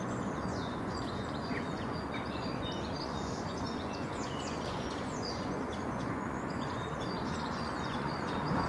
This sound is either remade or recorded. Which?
remade